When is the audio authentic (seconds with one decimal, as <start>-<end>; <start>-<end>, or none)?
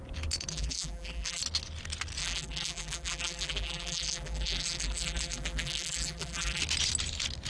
0.0-0.5; 1.4-2.2; 6.6-7.5